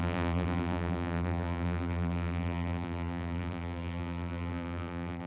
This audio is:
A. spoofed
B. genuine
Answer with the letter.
A